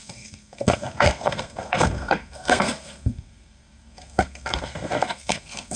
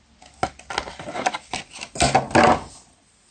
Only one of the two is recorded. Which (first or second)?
second